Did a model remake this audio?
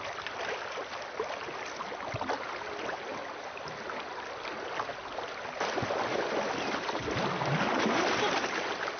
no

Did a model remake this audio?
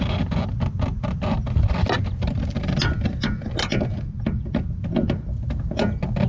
no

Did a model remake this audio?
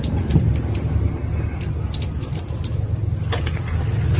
no